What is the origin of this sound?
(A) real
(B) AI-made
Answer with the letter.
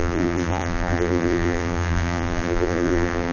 B